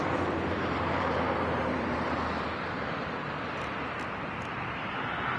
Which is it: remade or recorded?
remade